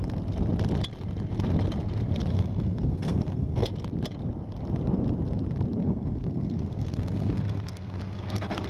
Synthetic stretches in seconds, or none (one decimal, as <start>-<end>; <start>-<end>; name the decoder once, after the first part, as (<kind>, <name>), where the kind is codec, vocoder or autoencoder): 2.3-3.7 (codec, SNAC); 5.8-8.7